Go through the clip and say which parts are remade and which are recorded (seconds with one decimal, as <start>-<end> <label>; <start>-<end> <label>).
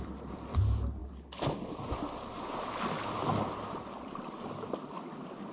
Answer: 0.0-5.5 recorded